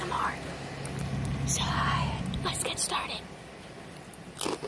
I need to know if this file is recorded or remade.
recorded